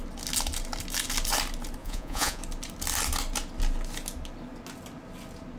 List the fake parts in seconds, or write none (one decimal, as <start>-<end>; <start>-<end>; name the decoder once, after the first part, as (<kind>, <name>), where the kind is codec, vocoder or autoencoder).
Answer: 1.8-2.4 (vocoder, Vocos)